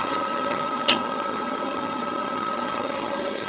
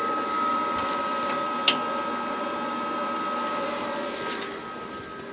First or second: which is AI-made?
first